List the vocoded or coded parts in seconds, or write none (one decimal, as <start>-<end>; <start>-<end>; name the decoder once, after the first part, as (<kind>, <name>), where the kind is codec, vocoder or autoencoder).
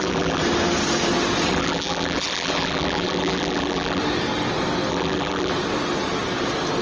0.0-0.4 (vocoder, BigVGAN v2); 1.5-4.0; 4.9-5.5